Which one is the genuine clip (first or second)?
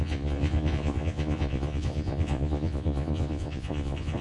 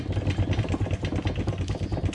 second